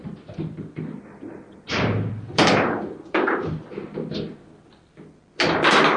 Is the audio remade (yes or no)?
yes